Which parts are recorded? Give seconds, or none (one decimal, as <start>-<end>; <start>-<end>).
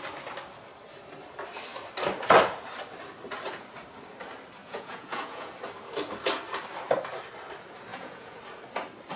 0.0-4.6; 5.5-7.9; 8.4-9.2